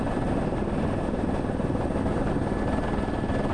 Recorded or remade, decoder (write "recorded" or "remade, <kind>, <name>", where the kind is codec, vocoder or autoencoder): recorded